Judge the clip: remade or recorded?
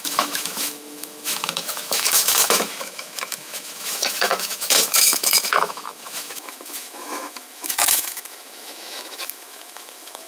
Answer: remade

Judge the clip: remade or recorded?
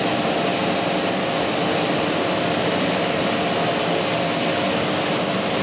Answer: recorded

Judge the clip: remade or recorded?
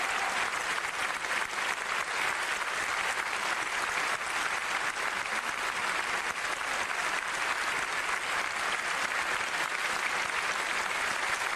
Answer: recorded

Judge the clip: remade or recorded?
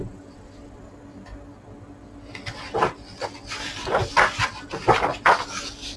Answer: recorded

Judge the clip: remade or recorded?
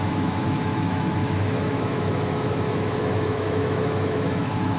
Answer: remade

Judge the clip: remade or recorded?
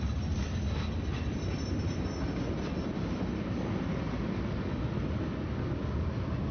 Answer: recorded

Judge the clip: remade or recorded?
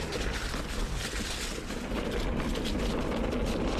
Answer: recorded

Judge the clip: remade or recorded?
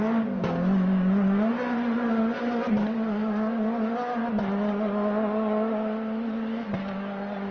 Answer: recorded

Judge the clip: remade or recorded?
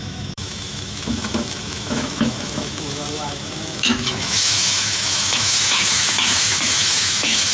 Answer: remade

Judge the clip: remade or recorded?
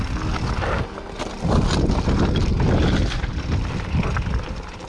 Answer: recorded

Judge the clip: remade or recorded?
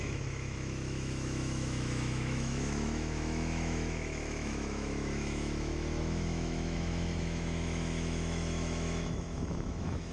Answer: remade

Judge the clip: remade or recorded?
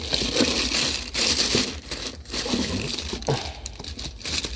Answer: recorded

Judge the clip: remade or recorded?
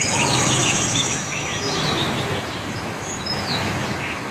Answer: remade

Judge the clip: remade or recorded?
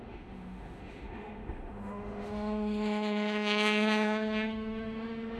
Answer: remade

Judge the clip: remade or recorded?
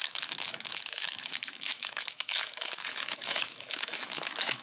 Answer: remade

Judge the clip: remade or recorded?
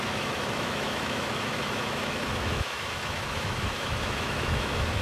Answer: remade